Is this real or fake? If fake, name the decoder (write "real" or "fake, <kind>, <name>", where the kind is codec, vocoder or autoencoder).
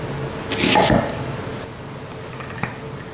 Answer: real